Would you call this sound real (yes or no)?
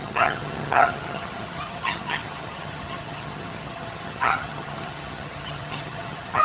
no